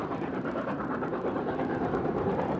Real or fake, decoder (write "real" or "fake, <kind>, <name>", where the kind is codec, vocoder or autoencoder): fake, vocoder, BigVGAN v2